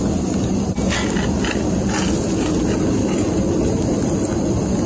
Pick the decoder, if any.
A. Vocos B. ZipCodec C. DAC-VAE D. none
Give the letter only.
D